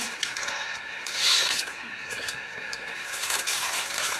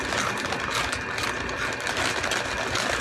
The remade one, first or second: first